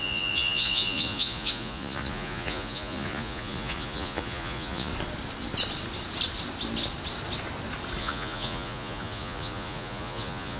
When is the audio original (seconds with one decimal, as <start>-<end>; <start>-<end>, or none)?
4.9-8.0